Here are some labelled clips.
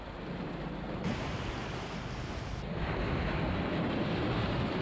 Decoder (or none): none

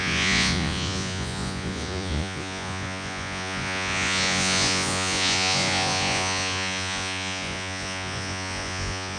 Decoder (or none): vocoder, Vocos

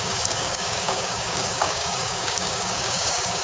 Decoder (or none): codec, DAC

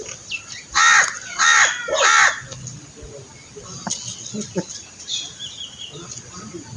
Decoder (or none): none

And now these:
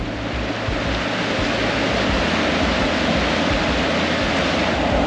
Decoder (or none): none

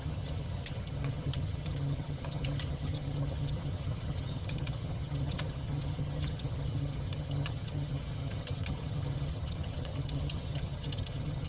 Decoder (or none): vocoder, HiFi-GAN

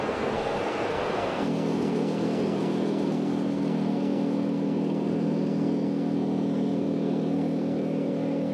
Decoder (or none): codec, SNAC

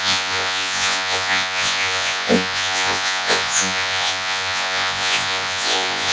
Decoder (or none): vocoder, Vocos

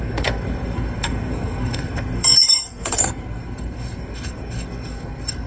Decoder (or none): codec, SNAC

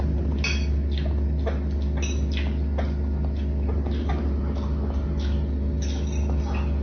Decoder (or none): none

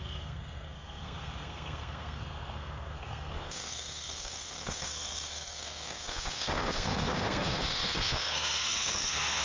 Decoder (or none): codec, SNAC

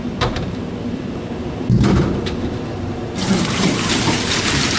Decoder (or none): vocoder, BigVGAN v2